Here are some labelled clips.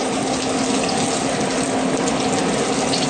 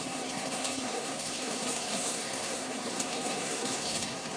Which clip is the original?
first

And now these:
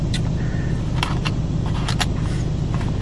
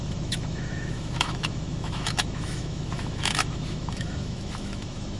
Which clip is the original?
first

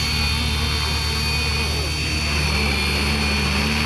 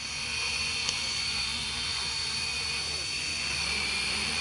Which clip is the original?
first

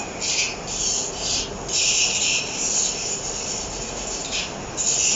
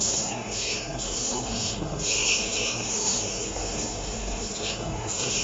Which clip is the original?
first